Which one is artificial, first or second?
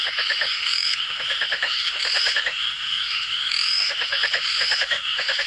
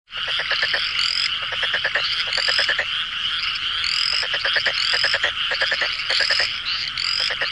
first